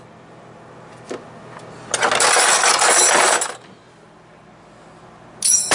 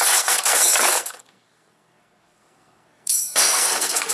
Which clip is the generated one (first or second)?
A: second